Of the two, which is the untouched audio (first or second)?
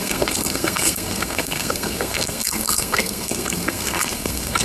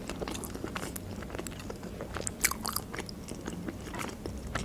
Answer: second